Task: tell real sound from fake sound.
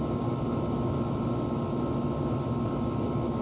real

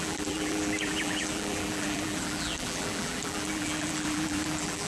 fake